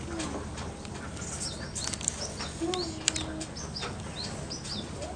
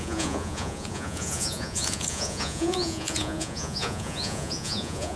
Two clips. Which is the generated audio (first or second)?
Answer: second